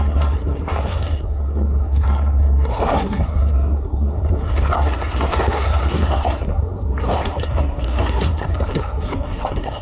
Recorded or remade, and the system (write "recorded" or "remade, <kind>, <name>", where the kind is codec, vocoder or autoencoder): remade, codec, SNAC